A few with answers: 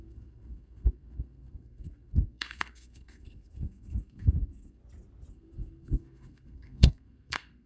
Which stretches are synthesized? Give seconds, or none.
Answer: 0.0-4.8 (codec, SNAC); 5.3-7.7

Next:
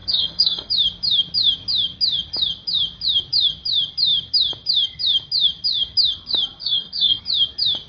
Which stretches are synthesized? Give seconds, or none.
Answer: 0.0-0.7 (codec, SNAC); 6.6-7.2

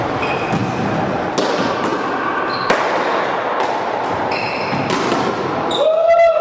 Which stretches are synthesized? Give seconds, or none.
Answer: none

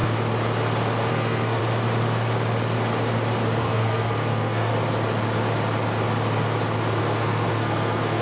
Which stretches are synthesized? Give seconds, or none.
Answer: 1.1-1.6 (codec, SNAC); 3.6-4.7; 7.0-8.2

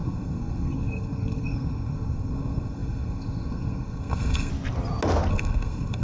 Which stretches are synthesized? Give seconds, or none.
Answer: 0.0-4.5 (codec, SNAC); 5.3-6.0

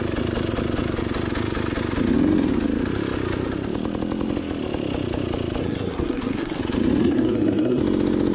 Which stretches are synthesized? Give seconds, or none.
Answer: 5.6-6.6 (codec, SNAC); 7.0-7.8

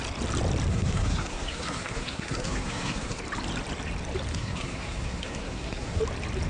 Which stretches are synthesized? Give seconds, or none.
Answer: 0.7-3.2 (codec, SNAC); 4.3-6.0

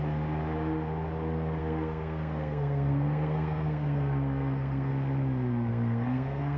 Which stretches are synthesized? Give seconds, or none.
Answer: 1.6-4.9 (codec, SNAC); 5.7-6.6